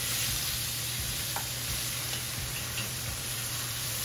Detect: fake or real fake